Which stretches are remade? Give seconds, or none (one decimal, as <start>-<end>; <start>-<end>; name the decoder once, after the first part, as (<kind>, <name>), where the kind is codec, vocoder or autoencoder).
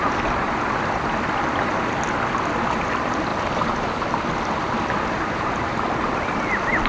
0.0-6.9 (vocoder, BigVGAN v2)